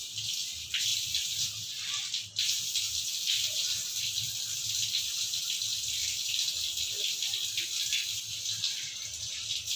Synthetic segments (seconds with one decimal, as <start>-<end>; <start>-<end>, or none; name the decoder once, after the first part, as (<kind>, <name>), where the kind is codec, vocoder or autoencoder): 6.0-8.2 (vocoder, BigVGAN v2)